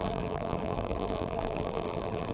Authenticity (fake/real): fake